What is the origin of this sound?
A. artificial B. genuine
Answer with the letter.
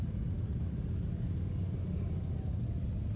B